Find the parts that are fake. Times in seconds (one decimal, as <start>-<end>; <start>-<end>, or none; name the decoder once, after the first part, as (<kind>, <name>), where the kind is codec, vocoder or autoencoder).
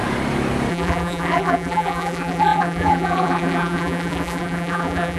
0.7-5.2 (vocoder, BigVGAN v2)